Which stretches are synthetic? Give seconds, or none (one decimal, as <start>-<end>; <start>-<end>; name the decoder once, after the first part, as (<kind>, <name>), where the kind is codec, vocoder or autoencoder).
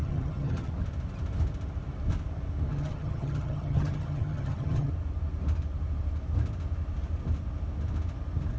0.0-0.7 (vocoder, HiFi-GAN); 2.7-4.9